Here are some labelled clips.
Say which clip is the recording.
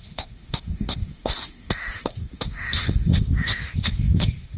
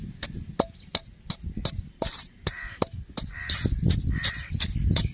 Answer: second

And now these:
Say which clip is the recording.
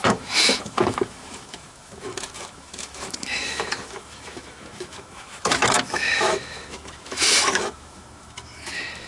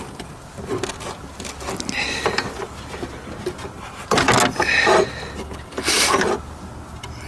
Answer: second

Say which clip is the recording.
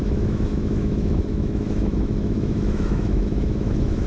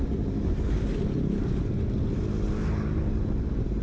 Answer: second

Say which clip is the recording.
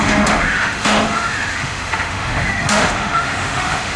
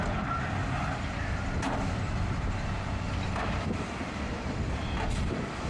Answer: second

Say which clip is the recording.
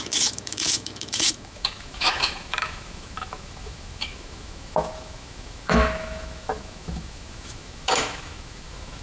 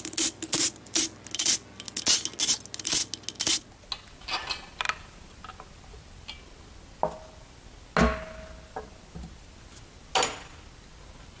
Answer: second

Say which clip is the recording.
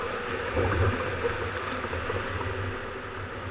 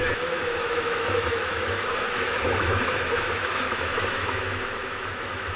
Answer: first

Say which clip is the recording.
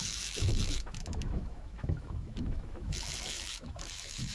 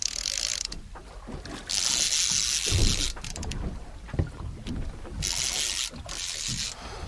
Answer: second